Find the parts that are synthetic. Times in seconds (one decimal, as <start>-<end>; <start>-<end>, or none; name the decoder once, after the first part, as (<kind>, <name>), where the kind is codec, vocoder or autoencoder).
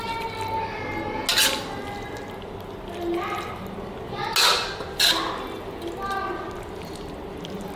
none